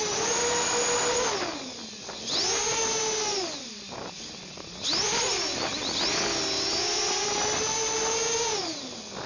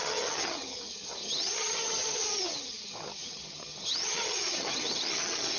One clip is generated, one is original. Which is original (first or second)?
first